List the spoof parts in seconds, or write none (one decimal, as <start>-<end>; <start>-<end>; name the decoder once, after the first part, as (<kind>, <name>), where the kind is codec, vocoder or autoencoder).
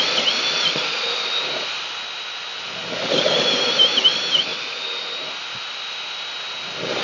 2.8-4.0 (vocoder, BigVGAN v2)